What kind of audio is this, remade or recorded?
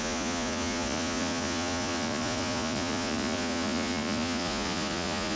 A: remade